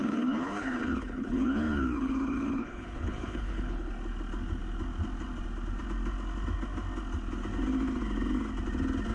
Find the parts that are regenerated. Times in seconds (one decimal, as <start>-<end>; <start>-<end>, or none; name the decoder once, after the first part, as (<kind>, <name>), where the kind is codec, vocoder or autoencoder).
0.0-3.9 (codec, HILCodec)